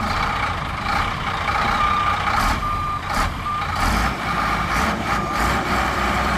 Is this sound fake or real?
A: fake